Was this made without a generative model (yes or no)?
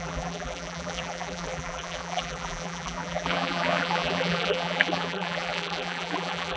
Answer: no